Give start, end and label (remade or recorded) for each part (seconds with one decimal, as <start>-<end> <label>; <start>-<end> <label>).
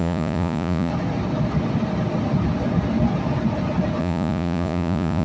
0.0-0.9 remade; 0.9-4.0 recorded; 4.0-5.2 remade